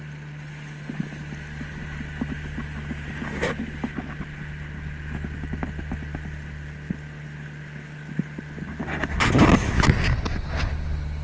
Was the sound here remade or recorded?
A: recorded